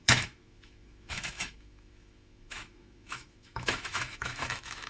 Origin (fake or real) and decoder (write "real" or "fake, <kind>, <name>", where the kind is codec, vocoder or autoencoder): fake, autoencoder, DAC-VAE